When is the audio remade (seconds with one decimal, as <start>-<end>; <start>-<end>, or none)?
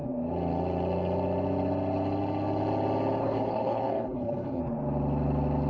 3.2-4.6